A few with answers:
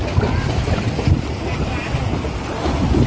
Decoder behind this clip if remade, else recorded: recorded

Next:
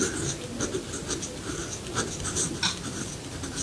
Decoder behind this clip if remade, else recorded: recorded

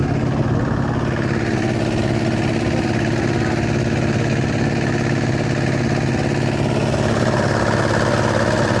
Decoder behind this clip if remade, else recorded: recorded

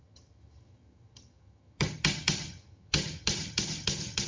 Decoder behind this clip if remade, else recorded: remade, vocoder, HiFi-GAN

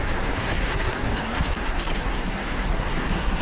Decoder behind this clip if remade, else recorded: remade, codec, SNAC